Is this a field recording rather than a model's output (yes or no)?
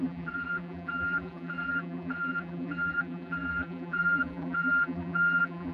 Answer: no